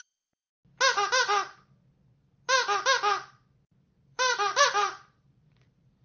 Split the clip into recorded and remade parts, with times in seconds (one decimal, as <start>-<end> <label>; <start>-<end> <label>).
0.0-0.5 remade; 0.5-4.0 recorded; 4.0-6.0 remade

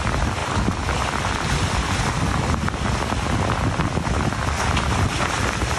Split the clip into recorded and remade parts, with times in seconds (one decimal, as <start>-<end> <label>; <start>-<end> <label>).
0.0-5.8 recorded

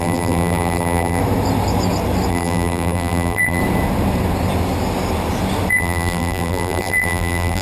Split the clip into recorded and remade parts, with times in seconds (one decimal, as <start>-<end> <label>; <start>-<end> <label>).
0.0-1.2 remade; 1.2-2.3 recorded; 2.3-3.6 remade; 3.6-5.7 recorded; 5.7-7.6 remade

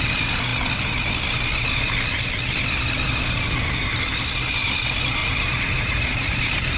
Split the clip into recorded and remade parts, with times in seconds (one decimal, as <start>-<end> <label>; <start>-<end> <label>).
0.0-5.2 recorded; 5.2-6.8 remade

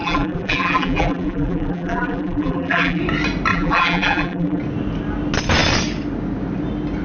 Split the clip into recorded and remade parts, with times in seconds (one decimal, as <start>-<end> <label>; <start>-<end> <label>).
0.0-3.0 remade; 3.0-3.5 recorded; 3.5-4.6 remade; 4.6-7.0 recorded

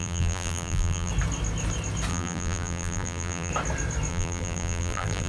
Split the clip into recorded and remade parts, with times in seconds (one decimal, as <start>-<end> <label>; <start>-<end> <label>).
0.0-1.1 remade; 1.1-2.1 recorded; 2.1-3.5 remade; 3.5-4.1 recorded; 4.1-5.3 remade